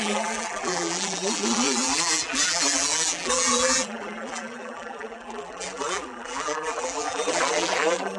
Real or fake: fake